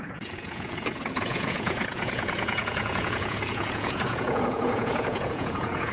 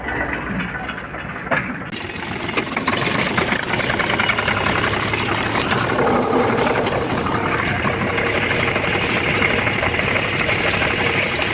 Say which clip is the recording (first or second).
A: second